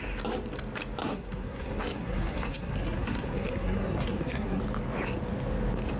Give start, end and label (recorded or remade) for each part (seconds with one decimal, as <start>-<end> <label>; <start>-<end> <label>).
0.0-1.0 recorded; 1.0-4.6 remade; 4.6-6.0 recorded